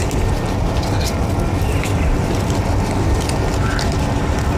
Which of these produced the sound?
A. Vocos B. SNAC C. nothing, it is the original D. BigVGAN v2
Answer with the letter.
C